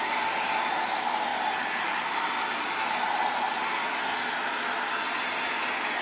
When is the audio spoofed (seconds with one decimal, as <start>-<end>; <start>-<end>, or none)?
none